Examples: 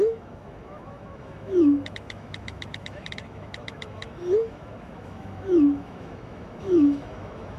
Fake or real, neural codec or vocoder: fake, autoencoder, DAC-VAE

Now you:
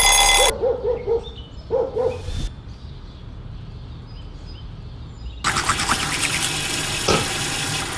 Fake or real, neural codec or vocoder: real